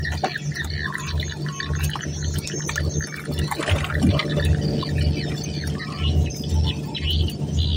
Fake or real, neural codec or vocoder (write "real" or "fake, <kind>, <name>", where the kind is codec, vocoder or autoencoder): real